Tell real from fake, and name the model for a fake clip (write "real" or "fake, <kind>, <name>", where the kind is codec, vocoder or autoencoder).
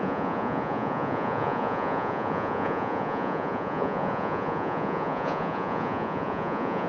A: fake, vocoder, Vocos